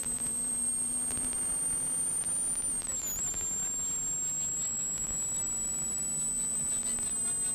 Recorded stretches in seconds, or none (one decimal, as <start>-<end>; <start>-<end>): 2.2-7.5